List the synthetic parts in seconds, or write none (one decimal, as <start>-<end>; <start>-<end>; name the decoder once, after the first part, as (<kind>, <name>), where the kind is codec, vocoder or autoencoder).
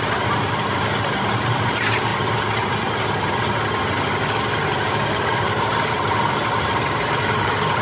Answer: 0.0-2.1 (vocoder, BigVGAN v2); 5.1-7.8